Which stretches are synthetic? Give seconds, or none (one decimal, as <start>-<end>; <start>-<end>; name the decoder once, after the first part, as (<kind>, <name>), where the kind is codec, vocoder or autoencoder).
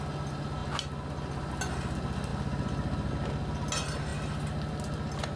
none